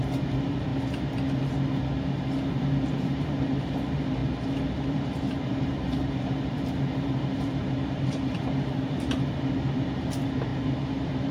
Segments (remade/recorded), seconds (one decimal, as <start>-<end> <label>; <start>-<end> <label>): 0.0-0.7 remade; 0.7-2.9 recorded; 2.9-4.2 remade; 4.2-4.9 recorded; 4.9-11.3 remade